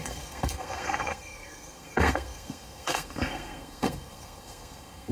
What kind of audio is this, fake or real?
fake